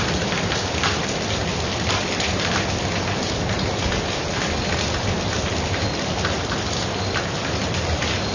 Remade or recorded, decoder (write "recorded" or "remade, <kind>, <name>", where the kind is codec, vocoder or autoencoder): recorded